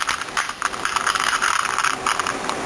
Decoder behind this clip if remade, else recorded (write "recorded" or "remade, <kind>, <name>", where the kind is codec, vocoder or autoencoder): recorded